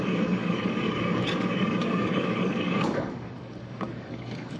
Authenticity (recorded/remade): remade